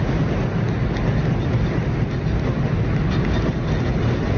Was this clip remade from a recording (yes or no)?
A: no